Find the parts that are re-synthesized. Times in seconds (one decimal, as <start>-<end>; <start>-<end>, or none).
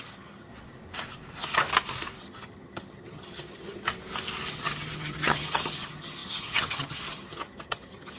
0.0-0.5; 2.2-3.9; 4.5-8.2